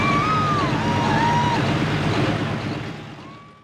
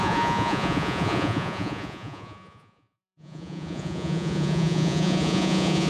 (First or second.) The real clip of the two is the first